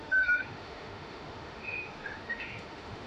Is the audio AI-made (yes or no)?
yes